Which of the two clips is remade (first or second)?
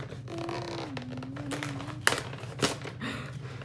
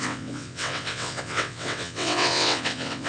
second